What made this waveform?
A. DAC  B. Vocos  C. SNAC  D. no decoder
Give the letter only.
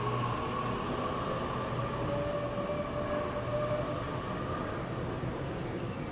D